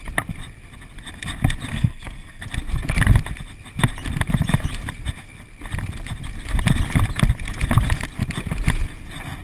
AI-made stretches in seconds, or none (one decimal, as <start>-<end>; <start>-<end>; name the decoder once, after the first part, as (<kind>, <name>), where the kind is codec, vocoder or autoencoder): 1.7-2.4 (codec, SNAC)